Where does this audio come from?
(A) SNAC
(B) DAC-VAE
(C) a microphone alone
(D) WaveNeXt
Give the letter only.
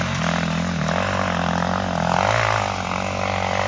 C